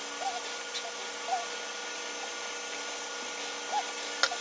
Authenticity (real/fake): real